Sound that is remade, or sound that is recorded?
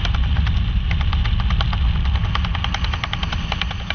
recorded